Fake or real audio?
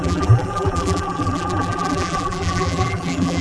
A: fake